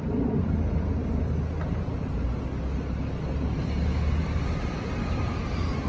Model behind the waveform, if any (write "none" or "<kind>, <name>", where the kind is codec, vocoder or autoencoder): none